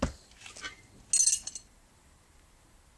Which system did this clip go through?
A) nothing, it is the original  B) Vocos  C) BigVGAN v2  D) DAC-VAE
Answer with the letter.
A